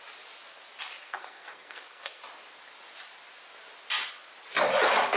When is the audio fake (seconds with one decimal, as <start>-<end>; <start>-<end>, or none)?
1.0-2.2